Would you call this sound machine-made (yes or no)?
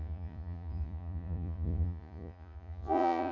yes